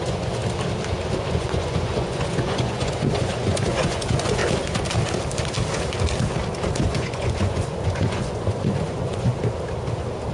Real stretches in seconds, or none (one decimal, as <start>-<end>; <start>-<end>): 0.4-1.3; 4.4-6.7; 9.3-10.3